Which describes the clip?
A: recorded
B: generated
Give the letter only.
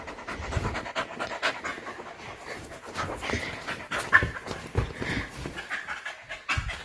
A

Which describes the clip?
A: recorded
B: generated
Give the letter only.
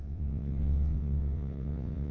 B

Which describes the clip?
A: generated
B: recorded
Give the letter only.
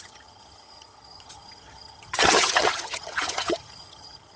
A